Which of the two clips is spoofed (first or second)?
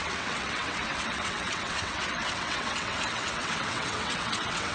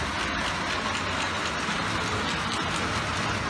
first